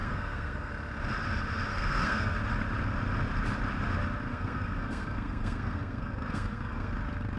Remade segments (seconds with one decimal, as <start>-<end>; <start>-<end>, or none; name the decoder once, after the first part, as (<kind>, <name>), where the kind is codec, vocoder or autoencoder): 0.0-0.7 (codec, SNAC); 1.7-2.4; 4.3-6.9